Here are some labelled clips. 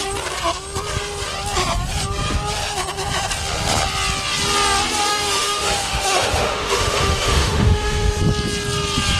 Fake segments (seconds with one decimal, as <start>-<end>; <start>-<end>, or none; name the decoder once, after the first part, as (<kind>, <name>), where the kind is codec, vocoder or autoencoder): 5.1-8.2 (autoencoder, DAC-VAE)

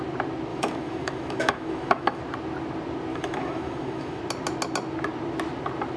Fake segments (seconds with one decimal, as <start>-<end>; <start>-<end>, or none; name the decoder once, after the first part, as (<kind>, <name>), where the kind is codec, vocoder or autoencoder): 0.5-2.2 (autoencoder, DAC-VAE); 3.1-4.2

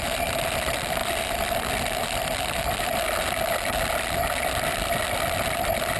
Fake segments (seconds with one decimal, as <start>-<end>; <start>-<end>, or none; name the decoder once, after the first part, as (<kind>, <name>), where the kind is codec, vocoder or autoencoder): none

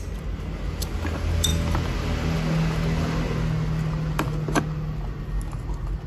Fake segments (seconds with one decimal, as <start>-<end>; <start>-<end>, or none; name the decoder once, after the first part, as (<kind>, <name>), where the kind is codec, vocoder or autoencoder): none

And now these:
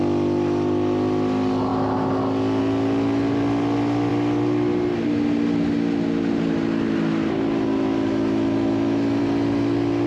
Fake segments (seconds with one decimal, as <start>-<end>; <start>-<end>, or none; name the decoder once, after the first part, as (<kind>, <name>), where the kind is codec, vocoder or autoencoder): none

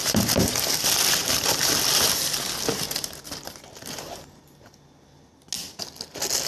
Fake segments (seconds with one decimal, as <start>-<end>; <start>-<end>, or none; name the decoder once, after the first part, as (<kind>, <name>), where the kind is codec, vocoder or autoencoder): 0.0-0.5 (vocoder, BigVGAN v2)